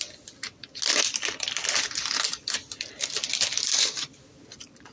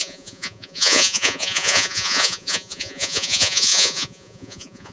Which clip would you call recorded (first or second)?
first